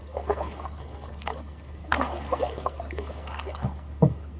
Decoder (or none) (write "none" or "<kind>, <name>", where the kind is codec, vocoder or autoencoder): codec, SNAC